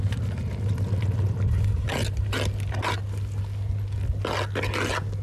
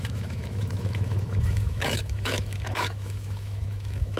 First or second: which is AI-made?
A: second